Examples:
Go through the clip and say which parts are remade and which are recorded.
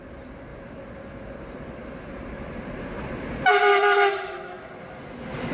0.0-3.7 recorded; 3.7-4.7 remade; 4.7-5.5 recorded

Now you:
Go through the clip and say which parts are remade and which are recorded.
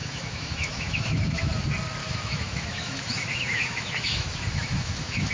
0.0-1.5 remade; 1.5-2.0 recorded; 2.0-5.3 remade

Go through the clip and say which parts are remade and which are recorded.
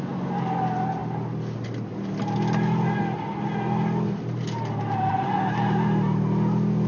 0.0-6.9 recorded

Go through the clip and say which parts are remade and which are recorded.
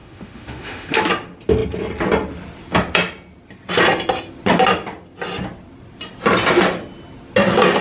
0.0-1.0 remade; 1.0-7.8 recorded